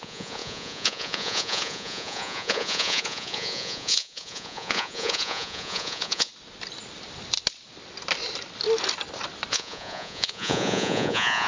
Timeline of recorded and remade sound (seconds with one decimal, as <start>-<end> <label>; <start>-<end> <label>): 0.0-6.3 remade; 6.3-9.5 recorded; 9.5-11.5 remade